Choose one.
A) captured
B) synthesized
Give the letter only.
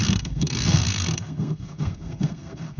B